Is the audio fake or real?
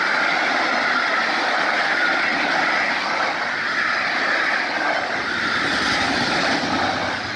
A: real